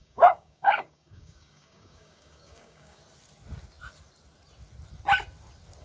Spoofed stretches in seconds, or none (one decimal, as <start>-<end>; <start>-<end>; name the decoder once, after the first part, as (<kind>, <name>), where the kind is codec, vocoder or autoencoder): 0.0-3.0 (codec, DAC)